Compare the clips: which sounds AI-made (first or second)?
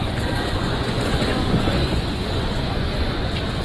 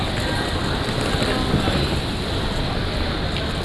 first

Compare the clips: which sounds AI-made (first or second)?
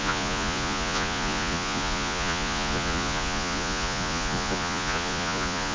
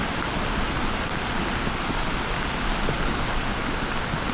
first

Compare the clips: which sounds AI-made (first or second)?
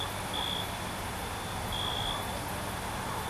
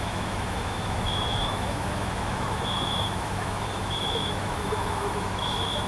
second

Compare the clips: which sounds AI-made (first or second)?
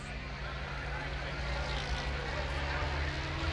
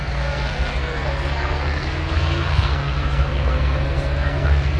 second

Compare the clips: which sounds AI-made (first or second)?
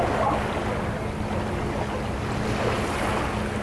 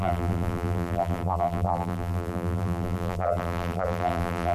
second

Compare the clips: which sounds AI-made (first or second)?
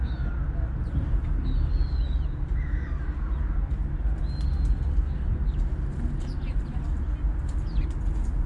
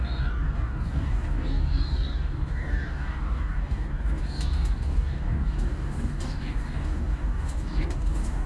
second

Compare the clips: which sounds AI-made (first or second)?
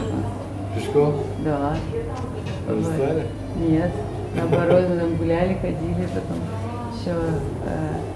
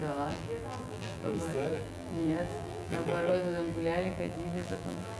second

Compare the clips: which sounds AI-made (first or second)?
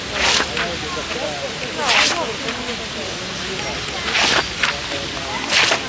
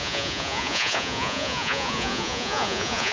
second